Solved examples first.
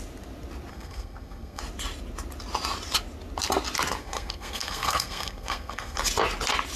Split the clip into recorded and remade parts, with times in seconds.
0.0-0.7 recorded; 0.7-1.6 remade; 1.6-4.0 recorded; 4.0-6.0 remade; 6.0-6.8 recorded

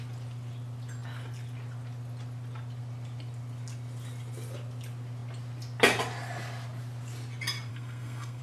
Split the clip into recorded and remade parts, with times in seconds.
0.0-7.7 recorded; 7.7-8.4 remade

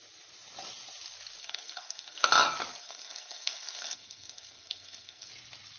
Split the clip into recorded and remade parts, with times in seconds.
0.0-1.4 recorded; 1.4-2.3 remade; 2.3-2.8 recorded; 2.8-5.3 remade; 5.3-5.8 recorded

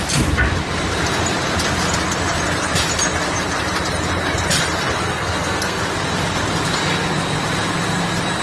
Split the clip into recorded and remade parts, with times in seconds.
0.0-5.0 recorded; 5.0-5.8 remade; 5.8-8.4 recorded